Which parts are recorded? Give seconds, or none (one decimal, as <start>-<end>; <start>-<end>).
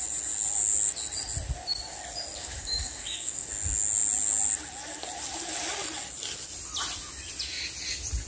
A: 0.0-2.4; 3.5-8.3